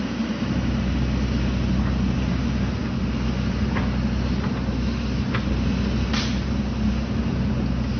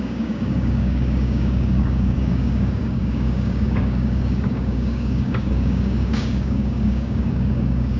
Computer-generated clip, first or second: second